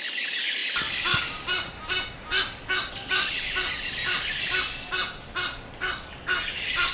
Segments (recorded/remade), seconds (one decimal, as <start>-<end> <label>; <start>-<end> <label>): 0.0-6.9 recorded